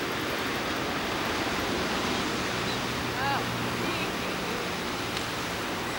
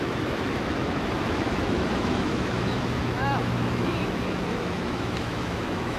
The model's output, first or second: second